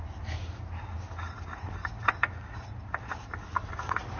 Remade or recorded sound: recorded